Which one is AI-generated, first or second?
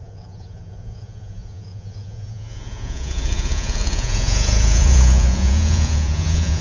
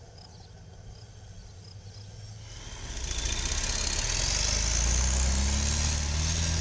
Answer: first